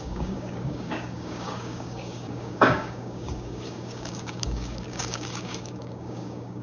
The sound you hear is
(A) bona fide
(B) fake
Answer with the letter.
B